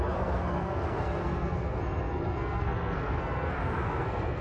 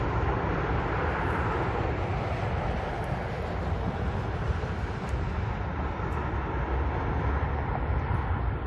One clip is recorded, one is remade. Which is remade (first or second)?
first